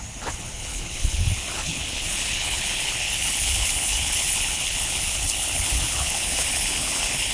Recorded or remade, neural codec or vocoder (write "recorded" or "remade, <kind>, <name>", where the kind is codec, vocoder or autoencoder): remade, codec, HILCodec